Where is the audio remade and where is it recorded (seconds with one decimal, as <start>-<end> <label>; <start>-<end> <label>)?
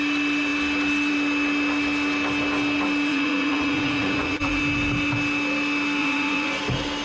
0.0-3.1 recorded; 3.1-4.6 remade; 4.6-6.0 recorded; 6.0-6.6 remade; 6.6-7.0 recorded